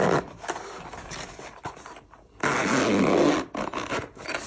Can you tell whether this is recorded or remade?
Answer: recorded